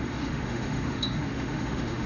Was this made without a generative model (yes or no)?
no